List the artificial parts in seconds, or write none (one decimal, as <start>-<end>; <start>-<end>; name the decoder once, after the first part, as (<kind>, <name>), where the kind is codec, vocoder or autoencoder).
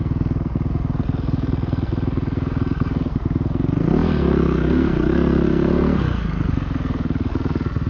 0.0-7.9 (codec, SNAC)